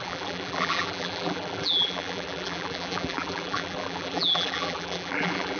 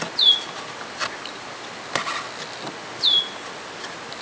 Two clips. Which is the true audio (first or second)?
second